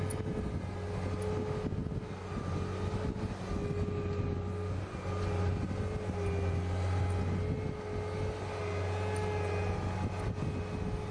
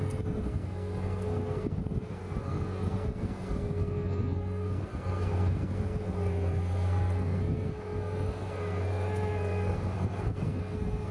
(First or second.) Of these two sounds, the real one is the first